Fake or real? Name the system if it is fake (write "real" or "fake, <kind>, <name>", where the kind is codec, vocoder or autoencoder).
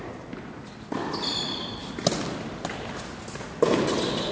real